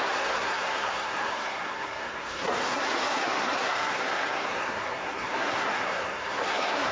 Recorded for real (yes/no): no